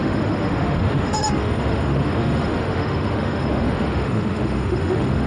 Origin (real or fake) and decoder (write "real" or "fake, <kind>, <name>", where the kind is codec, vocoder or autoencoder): fake, autoencoder, DAC-VAE